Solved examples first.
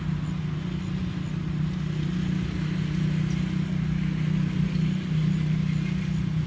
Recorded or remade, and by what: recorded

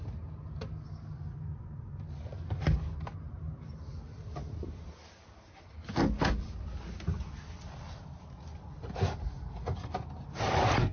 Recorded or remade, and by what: recorded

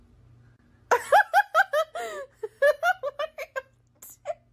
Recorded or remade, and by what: recorded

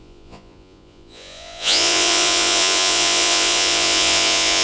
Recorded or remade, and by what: remade, vocoder, Vocos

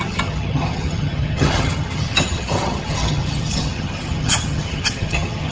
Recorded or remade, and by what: remade, vocoder, HiFi-GAN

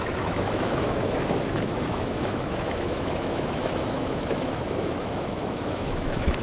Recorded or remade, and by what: remade, autoencoder, DAC-VAE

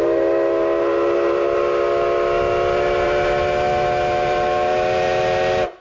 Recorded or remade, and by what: recorded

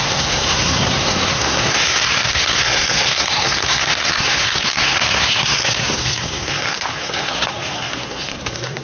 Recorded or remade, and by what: remade, codec, SNAC